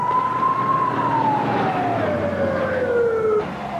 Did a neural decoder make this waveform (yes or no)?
no